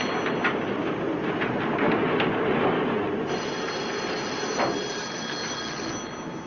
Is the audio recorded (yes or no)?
yes